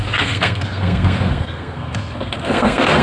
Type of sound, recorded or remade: remade